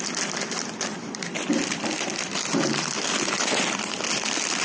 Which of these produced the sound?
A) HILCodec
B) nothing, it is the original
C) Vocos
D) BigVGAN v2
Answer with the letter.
D